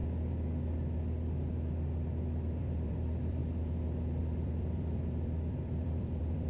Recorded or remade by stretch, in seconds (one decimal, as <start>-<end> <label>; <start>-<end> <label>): 0.0-2.6 recorded; 2.6-3.4 remade; 3.4-4.2 recorded; 4.2-6.5 remade